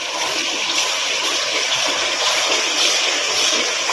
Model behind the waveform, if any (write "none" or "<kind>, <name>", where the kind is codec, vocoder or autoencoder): none